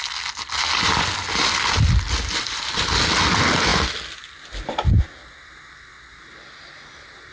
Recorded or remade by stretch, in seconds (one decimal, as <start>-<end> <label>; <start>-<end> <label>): 0.0-7.3 recorded